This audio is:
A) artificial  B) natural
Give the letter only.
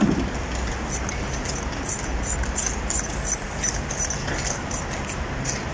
B